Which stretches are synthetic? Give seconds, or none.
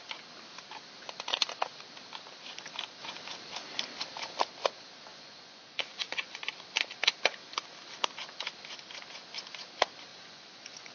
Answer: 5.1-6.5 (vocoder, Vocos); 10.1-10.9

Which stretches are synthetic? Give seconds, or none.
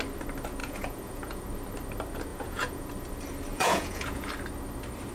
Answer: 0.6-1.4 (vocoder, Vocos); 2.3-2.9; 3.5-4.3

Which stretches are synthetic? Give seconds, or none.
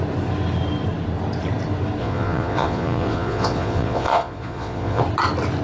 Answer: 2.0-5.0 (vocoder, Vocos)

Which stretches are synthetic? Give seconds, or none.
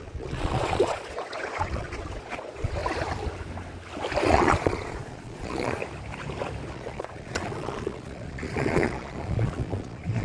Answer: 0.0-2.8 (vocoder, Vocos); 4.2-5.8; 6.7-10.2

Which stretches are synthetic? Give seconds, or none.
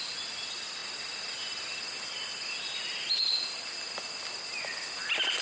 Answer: none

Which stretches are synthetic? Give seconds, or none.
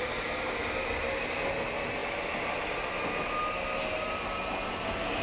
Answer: none